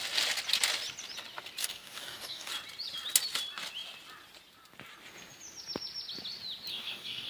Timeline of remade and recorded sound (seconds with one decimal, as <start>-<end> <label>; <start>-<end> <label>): 0.0-1.6 recorded; 1.6-2.5 remade; 2.5-6.7 recorded; 6.7-7.3 remade